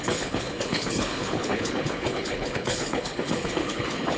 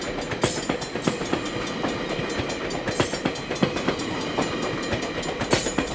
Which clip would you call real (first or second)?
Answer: second